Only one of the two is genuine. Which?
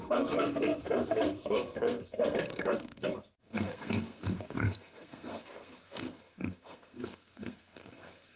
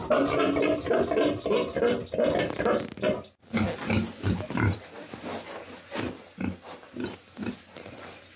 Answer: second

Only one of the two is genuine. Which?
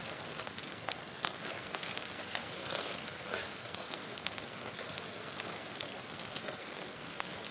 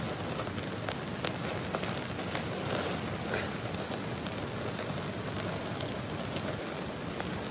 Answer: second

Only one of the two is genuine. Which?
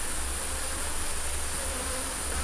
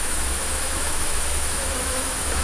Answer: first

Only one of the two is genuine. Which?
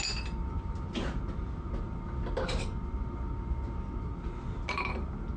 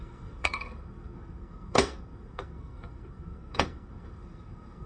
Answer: first